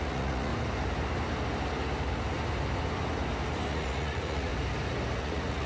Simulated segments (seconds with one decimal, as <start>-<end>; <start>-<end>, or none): 0.0-0.5; 3.7-4.5; 5.2-5.7